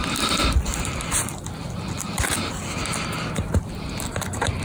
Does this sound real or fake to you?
real